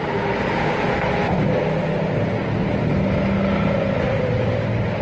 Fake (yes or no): no